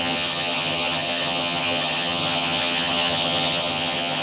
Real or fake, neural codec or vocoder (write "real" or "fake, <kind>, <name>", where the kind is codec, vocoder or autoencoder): fake, vocoder, HiFi-GAN